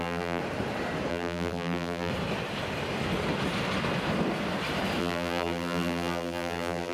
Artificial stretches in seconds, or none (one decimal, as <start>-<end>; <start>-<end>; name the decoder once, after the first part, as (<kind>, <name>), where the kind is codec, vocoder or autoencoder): 0.0-0.4 (vocoder, BigVGAN v2); 1.1-2.1; 5.0-6.9